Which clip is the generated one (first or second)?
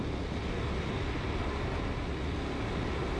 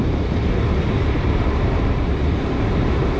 second